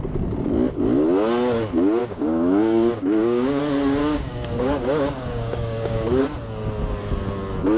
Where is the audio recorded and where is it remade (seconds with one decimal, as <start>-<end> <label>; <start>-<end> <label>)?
0.0-2.0 recorded; 2.0-3.6 remade; 3.6-4.0 recorded; 4.0-6.2 remade; 6.2-7.8 recorded